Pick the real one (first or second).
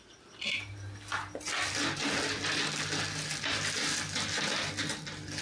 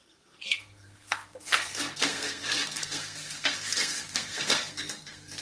first